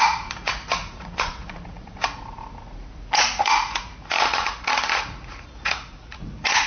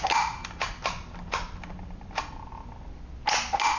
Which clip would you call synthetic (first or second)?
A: first